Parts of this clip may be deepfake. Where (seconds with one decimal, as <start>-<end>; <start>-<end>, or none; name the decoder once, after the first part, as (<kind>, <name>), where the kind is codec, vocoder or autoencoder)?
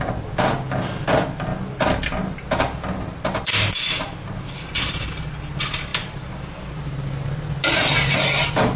none